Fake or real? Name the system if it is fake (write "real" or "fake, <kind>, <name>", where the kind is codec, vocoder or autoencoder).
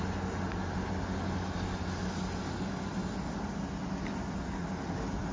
real